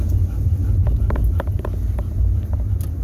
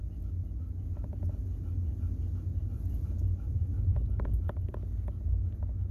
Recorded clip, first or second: second